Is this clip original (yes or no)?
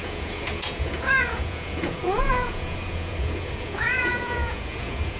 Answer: no